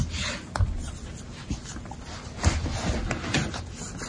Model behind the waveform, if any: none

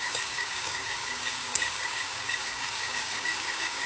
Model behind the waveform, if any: codec, DAC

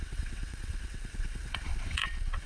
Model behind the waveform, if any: vocoder, WaveNeXt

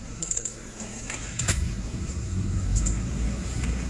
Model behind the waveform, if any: codec, SNAC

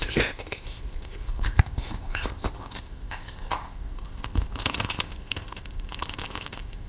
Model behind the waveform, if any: codec, ZipCodec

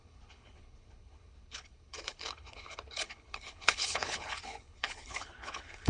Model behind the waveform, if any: codec, HILCodec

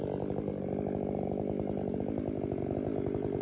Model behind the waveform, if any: none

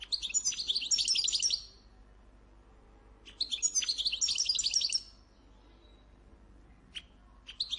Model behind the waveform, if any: none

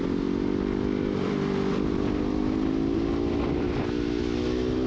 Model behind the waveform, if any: none